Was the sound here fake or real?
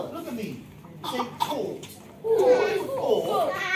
real